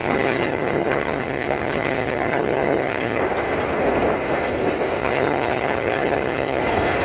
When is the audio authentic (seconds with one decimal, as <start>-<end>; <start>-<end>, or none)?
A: 3.2-5.0; 6.6-7.0

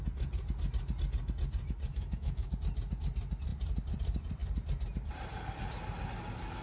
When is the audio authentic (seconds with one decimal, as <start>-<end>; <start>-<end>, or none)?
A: 0.0-1.9; 2.5-6.6

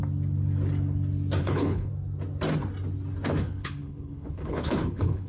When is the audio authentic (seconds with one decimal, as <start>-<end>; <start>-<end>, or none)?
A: 0.0-1.4; 1.9-3.4

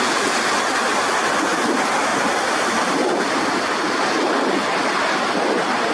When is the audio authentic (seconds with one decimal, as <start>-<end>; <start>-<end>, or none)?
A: 0.0-5.9

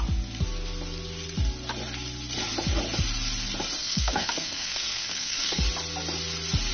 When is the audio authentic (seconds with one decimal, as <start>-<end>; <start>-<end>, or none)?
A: 0.0-3.8; 5.6-6.7

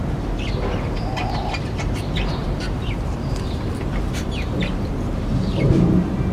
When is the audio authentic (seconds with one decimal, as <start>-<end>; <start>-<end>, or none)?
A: 0.0-2.4

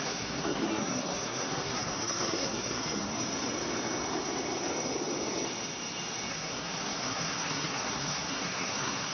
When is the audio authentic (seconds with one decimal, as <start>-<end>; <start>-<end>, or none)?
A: 3.1-6.3